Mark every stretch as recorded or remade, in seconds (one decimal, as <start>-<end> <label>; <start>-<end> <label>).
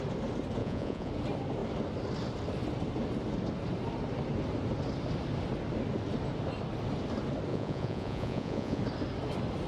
0.0-0.6 recorded; 0.6-1.1 remade; 1.1-7.5 recorded; 7.5-8.8 remade; 8.8-9.7 recorded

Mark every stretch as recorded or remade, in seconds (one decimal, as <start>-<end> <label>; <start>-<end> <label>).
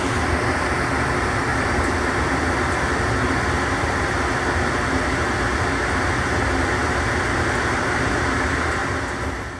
0.0-9.6 recorded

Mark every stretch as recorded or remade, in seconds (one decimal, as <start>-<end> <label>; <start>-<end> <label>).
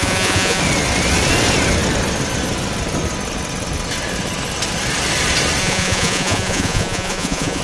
0.0-0.6 remade; 0.6-5.6 recorded; 5.6-7.6 remade